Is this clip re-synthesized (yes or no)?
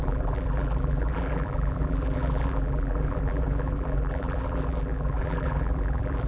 yes